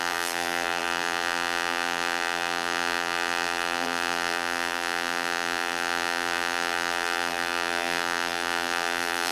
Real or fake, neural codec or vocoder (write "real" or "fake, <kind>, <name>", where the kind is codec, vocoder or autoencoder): fake, vocoder, BigVGAN v2